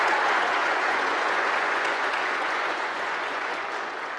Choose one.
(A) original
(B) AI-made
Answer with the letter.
B